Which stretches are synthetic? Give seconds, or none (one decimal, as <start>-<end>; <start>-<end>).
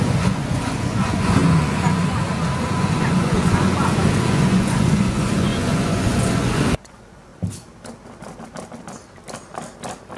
0.0-7.3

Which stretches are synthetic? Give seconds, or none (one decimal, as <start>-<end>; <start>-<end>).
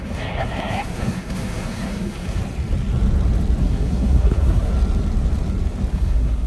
0.0-2.4; 3.6-4.7; 5.9-6.5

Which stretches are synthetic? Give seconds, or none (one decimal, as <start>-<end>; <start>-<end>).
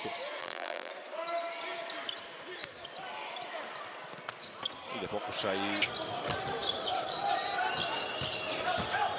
0.4-0.9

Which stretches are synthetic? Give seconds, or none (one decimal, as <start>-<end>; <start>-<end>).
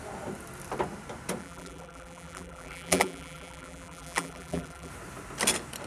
1.4-4.9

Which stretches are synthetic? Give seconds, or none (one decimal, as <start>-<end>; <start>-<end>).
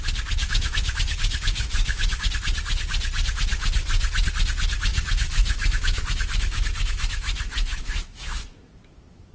0.4-2.3; 4.9-9.3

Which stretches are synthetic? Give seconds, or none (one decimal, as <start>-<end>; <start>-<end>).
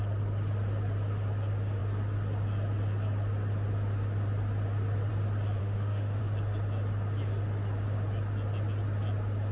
5.6-6.2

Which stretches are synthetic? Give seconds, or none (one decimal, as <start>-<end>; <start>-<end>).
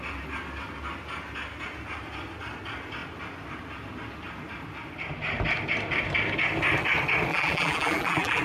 7.3-8.4